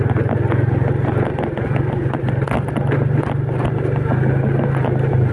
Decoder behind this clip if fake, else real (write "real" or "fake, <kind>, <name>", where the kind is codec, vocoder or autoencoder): real